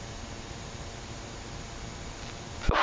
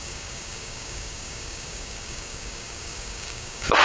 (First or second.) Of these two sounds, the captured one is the first